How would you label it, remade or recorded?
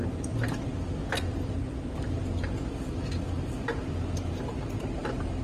recorded